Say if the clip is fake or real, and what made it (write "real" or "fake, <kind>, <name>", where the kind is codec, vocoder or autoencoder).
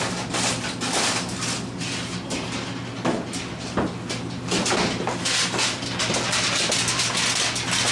real